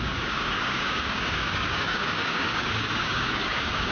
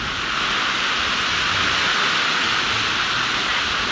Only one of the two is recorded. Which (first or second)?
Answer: second